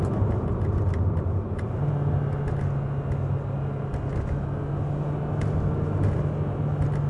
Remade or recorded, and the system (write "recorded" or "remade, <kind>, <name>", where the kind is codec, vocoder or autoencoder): recorded